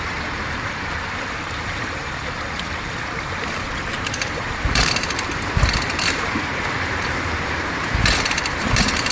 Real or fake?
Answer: fake